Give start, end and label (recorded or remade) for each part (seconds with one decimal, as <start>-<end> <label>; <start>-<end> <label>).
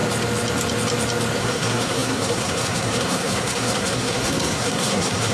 0.0-1.4 recorded; 1.4-5.3 remade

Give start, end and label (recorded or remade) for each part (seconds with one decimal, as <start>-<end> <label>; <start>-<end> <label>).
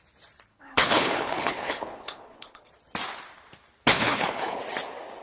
0.0-0.5 recorded; 0.5-2.7 remade; 2.7-3.9 recorded; 3.9-4.6 remade; 4.6-5.2 recorded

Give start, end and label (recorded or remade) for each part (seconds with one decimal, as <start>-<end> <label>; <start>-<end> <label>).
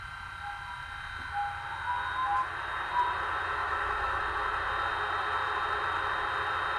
0.0-3.6 recorded; 3.6-4.2 remade; 4.2-6.8 recorded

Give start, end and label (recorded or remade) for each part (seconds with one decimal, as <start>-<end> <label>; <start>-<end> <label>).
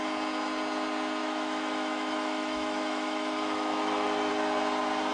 0.0-1.2 recorded; 1.2-4.3 remade; 4.3-5.1 recorded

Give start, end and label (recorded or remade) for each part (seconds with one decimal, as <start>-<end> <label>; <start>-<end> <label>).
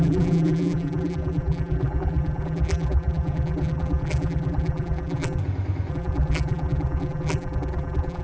0.0-5.4 remade; 5.4-5.9 recorded; 5.9-8.2 remade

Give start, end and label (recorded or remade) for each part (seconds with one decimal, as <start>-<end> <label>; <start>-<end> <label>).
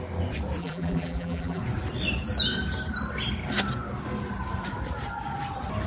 0.0-0.6 recorded; 0.6-1.6 remade; 1.6-5.9 recorded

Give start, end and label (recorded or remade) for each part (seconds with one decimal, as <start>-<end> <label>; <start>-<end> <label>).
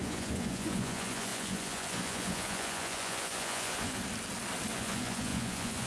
0.0-4.0 remade; 4.0-4.7 recorded; 4.7-5.9 remade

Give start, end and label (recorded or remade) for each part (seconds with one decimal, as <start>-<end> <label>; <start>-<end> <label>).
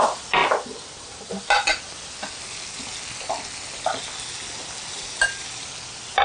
0.0-6.2 recorded